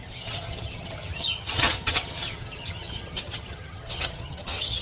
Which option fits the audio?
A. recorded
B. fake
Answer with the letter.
B